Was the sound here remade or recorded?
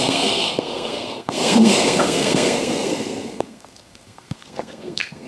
remade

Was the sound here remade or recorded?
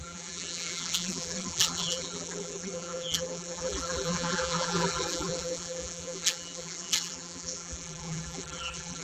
remade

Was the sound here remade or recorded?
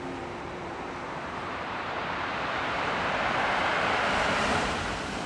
remade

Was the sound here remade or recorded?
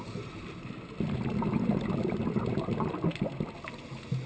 recorded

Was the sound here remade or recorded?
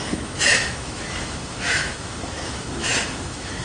remade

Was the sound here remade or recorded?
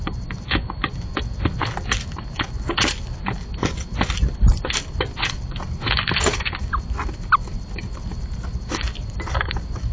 recorded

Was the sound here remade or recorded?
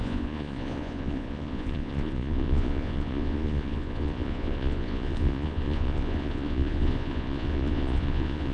remade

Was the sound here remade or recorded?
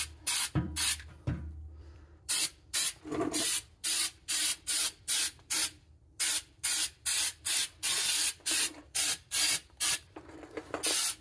remade